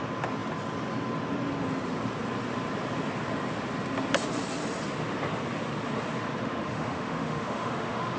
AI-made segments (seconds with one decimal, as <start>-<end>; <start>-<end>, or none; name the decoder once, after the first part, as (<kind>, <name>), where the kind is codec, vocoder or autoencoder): 6.4-8.2 (autoencoder, DAC-VAE)